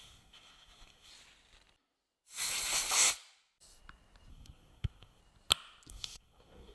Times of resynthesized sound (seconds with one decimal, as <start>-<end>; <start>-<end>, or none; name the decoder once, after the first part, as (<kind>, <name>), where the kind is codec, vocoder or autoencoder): 0.0-1.1 (codec, SNAC); 4.3-5.2; 5.9-6.7